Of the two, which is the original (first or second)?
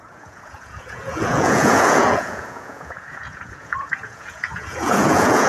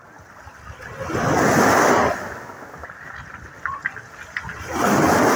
second